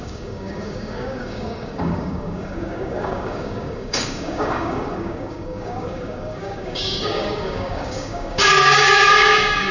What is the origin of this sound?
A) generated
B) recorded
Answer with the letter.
A